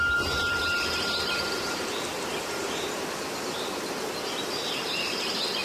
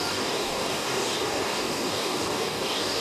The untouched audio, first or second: first